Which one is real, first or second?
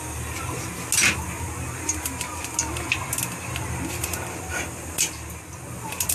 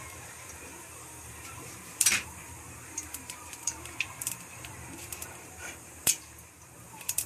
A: first